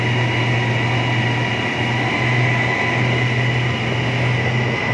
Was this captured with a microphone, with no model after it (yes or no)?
yes